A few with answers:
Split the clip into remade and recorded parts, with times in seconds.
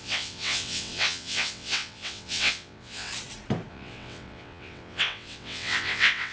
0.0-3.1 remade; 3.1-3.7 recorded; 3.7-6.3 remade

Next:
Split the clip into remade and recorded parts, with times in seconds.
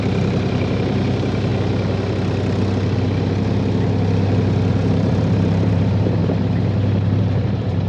0.0-1.5 remade; 1.5-4.7 recorded; 4.7-6.2 remade; 6.2-7.2 recorded; 7.2-7.9 remade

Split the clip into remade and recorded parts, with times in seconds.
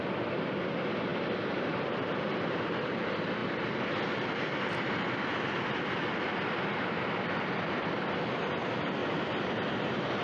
0.0-1.1 recorded; 1.1-3.0 remade; 3.0-10.2 recorded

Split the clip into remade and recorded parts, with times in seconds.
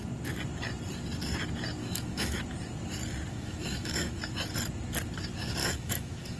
0.0-1.8 recorded; 1.8-2.4 remade; 2.4-3.3 recorded; 3.3-4.2 remade; 4.2-5.6 recorded; 5.6-6.4 remade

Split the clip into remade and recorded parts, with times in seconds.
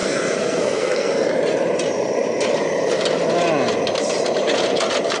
0.0-1.1 remade; 1.1-5.2 recorded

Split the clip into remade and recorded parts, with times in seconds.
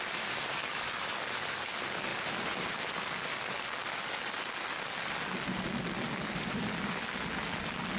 0.0-8.0 recorded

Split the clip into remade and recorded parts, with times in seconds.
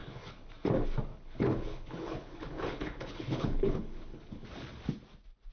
0.0-0.5 remade; 0.5-1.1 recorded; 1.1-4.4 remade; 4.4-5.5 recorded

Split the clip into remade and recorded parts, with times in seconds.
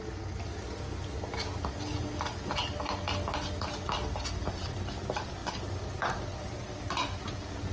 0.0-7.7 recorded